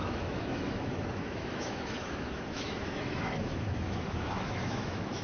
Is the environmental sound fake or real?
fake